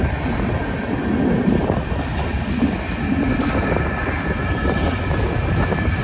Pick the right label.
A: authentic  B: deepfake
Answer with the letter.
A